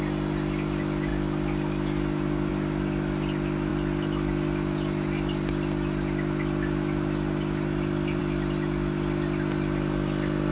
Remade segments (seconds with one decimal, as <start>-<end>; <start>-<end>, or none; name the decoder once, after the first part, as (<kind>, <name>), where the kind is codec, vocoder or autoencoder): none